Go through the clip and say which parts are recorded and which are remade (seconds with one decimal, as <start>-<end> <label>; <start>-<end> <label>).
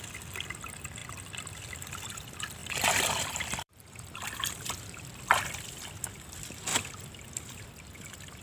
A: 0.0-2.6 recorded; 2.6-5.1 remade; 5.1-6.7 recorded; 6.7-7.6 remade; 7.6-8.4 recorded